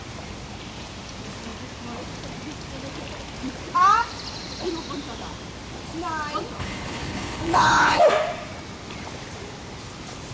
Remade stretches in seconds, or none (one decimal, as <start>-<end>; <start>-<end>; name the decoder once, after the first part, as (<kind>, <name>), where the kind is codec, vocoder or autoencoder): 6.6-8.0 (codec, HILCodec)